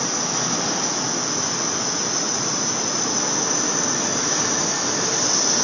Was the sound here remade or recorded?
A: recorded